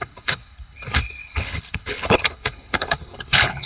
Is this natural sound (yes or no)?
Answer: no